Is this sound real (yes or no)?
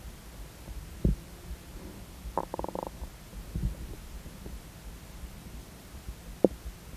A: yes